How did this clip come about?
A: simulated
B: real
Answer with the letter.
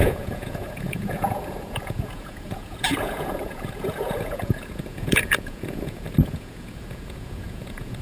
A